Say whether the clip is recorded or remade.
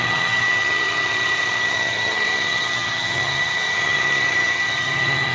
remade